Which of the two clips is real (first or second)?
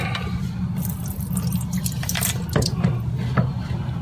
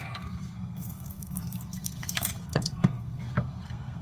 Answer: first